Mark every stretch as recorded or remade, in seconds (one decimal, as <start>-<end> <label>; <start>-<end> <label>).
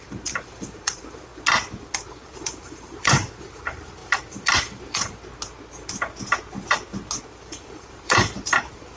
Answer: 0.0-1.3 remade; 1.3-1.8 recorded; 1.8-5.2 remade; 5.2-7.3 recorded; 7.3-9.0 remade